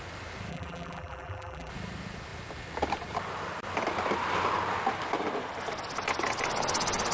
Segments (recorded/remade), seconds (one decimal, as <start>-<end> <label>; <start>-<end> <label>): 0.0-0.5 recorded; 0.5-1.7 remade; 1.7-7.1 recorded